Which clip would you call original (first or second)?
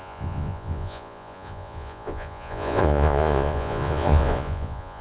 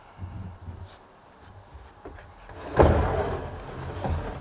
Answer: second